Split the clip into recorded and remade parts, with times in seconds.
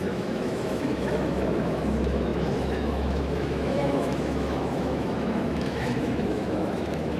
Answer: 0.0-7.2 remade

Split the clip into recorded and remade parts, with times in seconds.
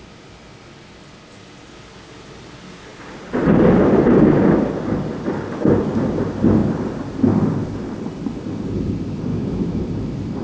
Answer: 0.0-9.3 recorded; 9.3-9.8 remade; 9.8-10.4 recorded